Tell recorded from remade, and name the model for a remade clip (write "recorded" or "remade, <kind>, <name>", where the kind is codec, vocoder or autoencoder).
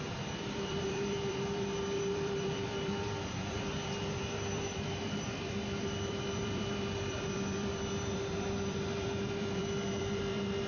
remade, vocoder, BigVGAN v2